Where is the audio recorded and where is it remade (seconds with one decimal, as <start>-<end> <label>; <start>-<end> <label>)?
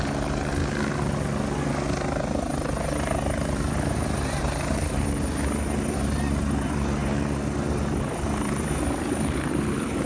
0.0-0.6 remade; 0.6-2.4 recorded; 2.4-10.1 remade